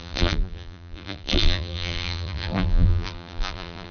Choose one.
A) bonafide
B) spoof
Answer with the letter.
B